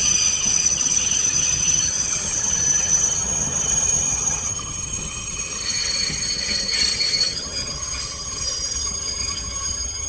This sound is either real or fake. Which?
fake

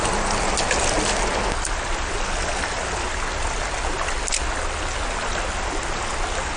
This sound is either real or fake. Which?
real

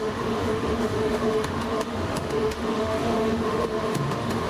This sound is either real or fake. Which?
fake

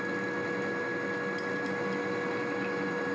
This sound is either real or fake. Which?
real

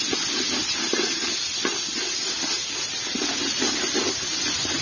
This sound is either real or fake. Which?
real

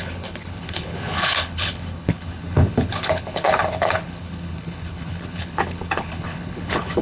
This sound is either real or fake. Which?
fake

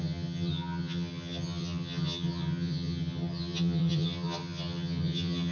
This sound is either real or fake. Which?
fake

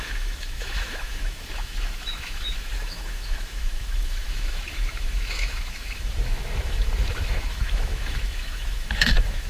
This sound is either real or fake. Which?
fake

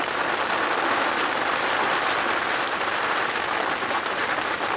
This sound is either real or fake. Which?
real